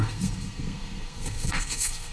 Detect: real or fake fake